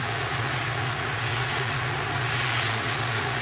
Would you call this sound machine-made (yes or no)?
yes